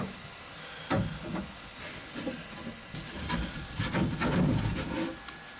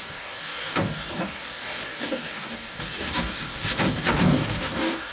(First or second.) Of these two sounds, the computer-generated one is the second